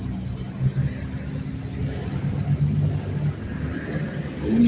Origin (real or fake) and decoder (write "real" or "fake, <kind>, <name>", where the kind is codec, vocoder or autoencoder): real